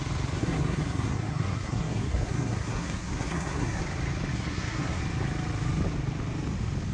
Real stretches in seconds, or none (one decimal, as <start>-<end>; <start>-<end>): 0.0-0.4; 3.8-4.3; 5.0-6.9